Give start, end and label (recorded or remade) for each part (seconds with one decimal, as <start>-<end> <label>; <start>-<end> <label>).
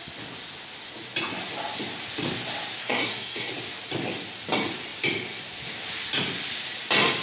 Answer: 0.0-2.8 recorded; 2.8-3.5 remade; 3.5-7.2 recorded